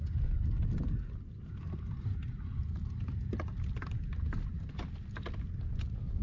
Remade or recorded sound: recorded